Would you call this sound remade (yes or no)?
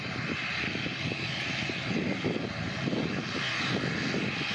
no